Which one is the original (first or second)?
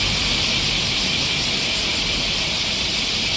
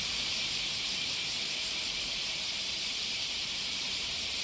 first